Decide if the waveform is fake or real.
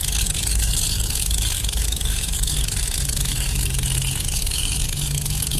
fake